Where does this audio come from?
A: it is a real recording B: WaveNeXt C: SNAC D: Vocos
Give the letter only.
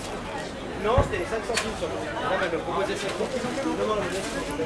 A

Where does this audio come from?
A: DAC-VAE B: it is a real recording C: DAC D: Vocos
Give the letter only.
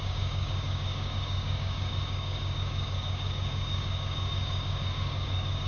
C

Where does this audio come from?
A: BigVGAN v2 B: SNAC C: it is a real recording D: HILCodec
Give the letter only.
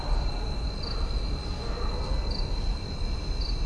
C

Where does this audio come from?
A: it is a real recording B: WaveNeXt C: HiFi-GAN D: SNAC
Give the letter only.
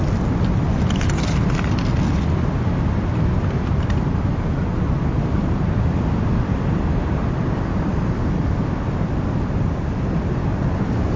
A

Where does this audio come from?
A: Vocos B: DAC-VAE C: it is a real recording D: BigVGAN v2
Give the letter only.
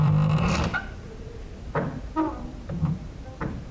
D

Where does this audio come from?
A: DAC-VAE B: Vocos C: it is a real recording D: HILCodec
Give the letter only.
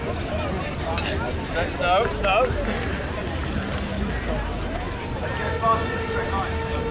C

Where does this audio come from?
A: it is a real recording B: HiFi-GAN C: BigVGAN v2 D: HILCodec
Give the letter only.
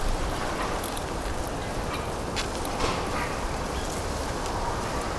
C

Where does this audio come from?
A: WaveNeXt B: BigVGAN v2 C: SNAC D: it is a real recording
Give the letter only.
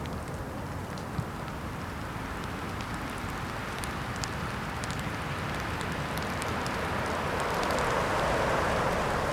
D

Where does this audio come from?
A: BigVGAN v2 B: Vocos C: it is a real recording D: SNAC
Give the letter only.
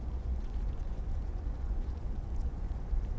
B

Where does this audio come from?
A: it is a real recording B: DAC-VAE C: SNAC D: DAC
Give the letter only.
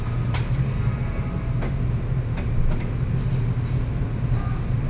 A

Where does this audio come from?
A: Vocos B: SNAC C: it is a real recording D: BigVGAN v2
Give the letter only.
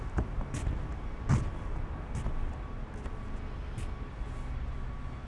C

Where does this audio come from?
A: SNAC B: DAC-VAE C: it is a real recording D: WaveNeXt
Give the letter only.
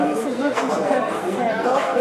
A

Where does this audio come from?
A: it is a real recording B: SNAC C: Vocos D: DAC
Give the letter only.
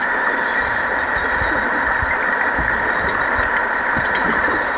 A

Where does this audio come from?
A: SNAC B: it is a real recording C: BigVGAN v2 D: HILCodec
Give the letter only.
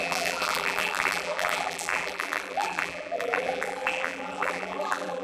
C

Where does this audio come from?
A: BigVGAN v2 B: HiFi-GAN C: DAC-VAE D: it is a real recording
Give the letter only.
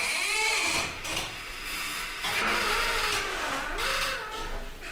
D